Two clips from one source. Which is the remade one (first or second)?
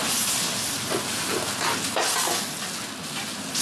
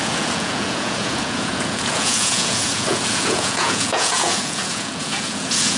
second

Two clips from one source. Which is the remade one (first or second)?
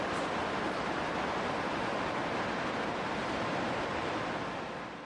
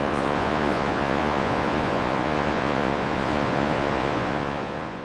second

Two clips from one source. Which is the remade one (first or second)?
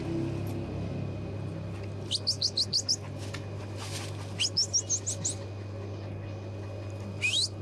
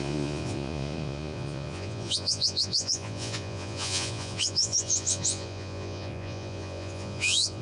second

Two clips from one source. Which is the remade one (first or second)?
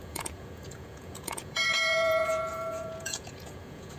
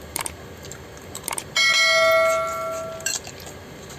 first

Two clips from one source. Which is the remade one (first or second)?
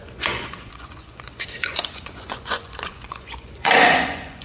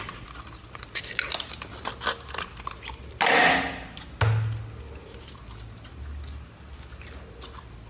first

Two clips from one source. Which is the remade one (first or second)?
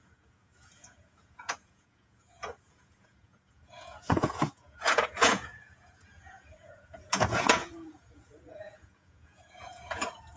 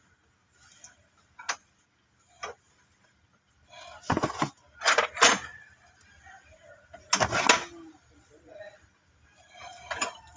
first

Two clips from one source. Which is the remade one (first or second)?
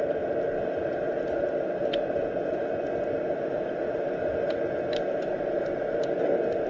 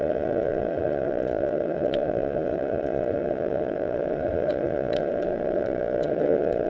second